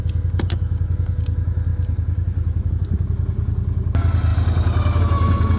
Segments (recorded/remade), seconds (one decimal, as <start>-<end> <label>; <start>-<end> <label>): 0.0-1.7 recorded; 1.7-2.7 remade; 2.7-5.6 recorded